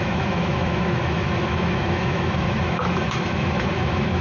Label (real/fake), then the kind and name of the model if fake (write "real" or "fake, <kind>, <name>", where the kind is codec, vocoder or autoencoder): fake, autoencoder, DAC-VAE